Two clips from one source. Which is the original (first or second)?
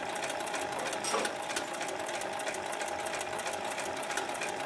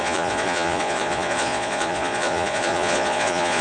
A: first